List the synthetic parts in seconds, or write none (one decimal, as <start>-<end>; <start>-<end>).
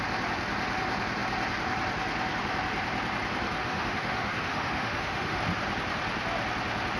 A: 3.6-5.4